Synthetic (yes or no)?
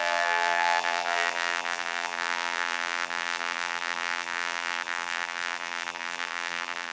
yes